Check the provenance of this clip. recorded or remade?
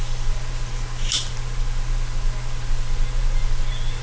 recorded